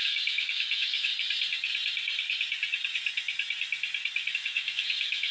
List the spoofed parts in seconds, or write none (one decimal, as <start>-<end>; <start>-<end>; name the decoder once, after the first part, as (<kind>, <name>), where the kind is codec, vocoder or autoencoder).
0.0-1.1 (autoencoder, DAC-VAE); 4.3-5.3